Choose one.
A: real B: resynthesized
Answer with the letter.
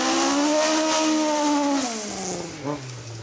A